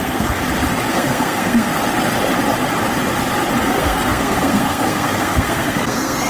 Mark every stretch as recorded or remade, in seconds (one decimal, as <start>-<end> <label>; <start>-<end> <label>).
0.0-0.4 remade; 0.4-0.9 recorded; 0.9-1.7 remade; 1.7-3.6 recorded; 3.6-6.3 remade